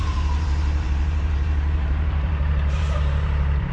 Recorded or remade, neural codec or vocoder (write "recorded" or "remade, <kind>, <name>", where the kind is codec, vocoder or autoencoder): remade, vocoder, BigVGAN v2